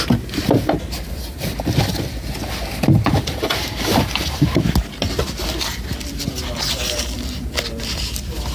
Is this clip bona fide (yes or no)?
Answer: yes